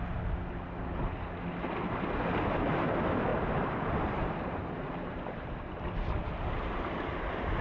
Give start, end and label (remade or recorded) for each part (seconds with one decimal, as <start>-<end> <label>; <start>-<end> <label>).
0.0-3.3 recorded; 3.3-5.8 remade; 5.8-7.6 recorded